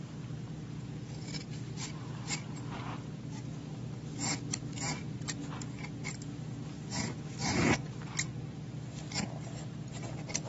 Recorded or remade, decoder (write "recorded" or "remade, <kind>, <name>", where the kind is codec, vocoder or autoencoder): recorded